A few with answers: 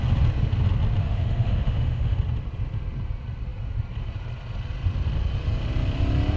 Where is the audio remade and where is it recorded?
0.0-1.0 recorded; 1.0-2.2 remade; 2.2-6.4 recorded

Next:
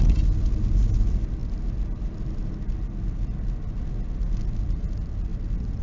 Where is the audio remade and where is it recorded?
0.0-5.8 recorded

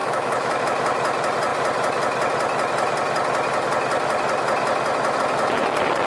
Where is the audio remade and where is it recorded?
0.0-0.6 remade; 0.6-6.1 recorded

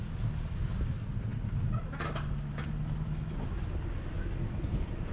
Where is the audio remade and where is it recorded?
0.0-5.1 recorded

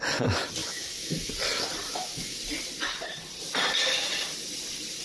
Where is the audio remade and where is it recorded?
0.0-0.6 recorded; 0.6-1.3 remade; 1.3-1.9 recorded; 1.9-2.4 remade; 2.4-5.0 recorded